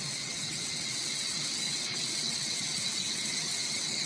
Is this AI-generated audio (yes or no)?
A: yes